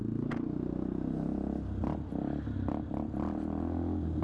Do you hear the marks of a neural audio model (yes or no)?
no